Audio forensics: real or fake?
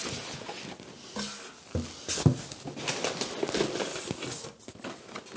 real